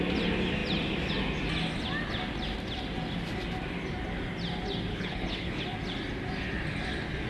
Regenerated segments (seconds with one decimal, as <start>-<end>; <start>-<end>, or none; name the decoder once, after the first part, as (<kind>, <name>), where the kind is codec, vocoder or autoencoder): 4.9-5.6 (codec, HILCodec)